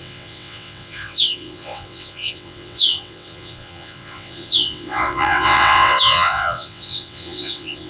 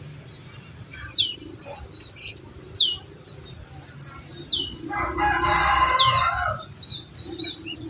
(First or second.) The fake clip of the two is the first